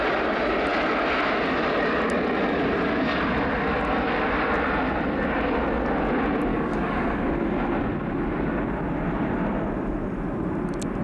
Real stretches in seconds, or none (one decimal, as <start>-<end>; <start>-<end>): 0.0-6.5; 7.3-11.0